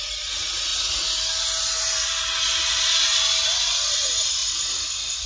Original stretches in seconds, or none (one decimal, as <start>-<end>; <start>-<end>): 0.0-5.3